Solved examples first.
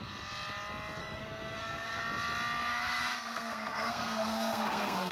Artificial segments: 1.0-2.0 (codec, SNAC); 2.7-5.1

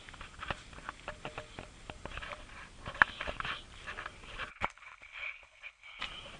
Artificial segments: 4.5-6.0 (codec, HILCodec)

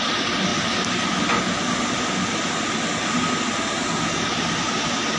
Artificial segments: none

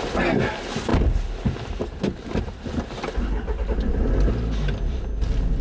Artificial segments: none

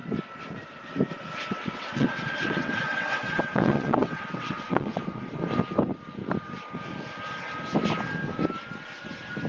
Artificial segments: 1.5-5.0 (vocoder, WaveNeXt)

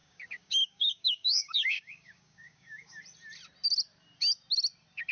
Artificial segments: 0.0-3.0 (codec, DAC)